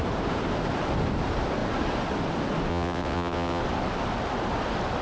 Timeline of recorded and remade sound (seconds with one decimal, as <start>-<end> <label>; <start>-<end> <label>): 0.0-2.7 recorded; 2.7-3.6 remade; 3.6-5.0 recorded

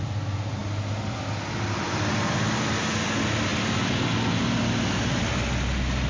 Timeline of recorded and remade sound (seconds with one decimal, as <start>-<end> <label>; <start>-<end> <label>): 0.0-6.1 recorded

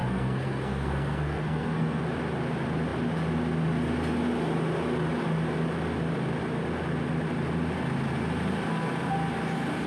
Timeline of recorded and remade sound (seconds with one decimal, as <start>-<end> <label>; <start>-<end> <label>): 0.0-2.0 remade; 2.0-9.9 recorded

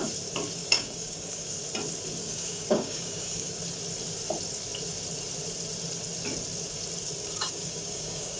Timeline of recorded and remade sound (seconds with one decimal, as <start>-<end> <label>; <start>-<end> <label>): 0.0-0.6 recorded; 0.6-1.5 remade; 1.5-2.2 recorded; 2.2-3.6 remade; 3.6-7.2 recorded; 7.2-8.4 remade

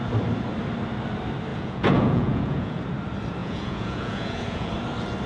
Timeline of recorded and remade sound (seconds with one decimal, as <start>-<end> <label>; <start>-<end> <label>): 0.0-1.5 recorded; 1.5-2.8 remade; 2.8-3.4 recorded; 3.4-4.7 remade; 4.7-5.3 recorded

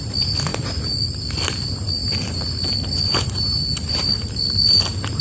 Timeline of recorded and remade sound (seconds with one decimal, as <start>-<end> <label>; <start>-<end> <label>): 0.0-5.2 recorded